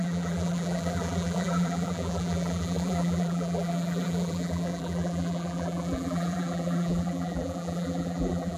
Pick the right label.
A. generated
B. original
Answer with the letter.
A